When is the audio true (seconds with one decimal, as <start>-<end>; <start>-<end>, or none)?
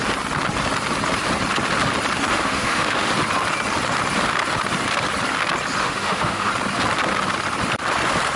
0.0-2.3; 3.1-5.8; 6.5-8.4